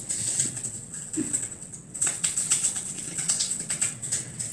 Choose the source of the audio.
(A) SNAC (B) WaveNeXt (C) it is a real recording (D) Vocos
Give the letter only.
B